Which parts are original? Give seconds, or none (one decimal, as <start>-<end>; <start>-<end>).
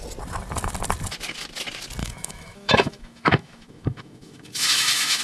0.0-2.0